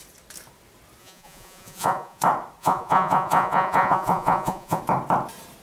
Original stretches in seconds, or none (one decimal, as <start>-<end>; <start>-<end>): 0.0-1.0; 2.2-2.6; 4.8-5.6